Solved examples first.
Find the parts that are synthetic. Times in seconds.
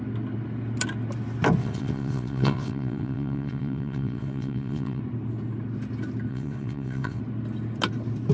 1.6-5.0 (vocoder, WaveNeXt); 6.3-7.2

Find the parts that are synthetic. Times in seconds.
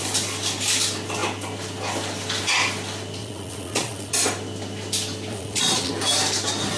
3.2-4.1 (vocoder, Vocos); 5.3-5.9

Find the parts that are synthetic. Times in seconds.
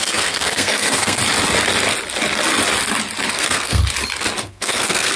0.0-1.2 (codec, SNAC); 3.3-3.8; 4.4-5.2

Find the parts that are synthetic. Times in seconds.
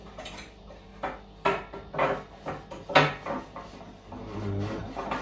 0.0-0.9 (vocoder, BigVGAN v2); 3.4-5.2